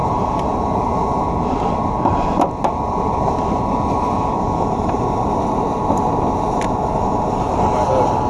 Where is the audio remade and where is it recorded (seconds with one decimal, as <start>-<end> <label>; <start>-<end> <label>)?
0.0-5.0 remade; 5.0-8.3 recorded